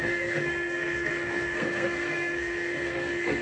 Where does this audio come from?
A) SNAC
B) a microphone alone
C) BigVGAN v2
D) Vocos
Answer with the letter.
A